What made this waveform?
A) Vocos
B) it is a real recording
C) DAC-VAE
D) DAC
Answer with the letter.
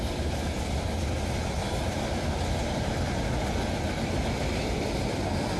B